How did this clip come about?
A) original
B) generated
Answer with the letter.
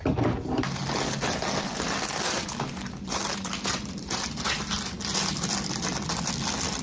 A